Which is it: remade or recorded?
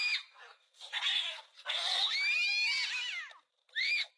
recorded